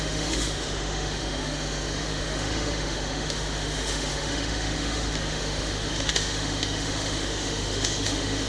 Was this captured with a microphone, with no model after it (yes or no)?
no